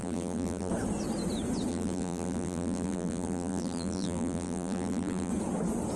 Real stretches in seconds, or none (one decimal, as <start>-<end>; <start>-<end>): 0.7-1.7; 5.3-6.0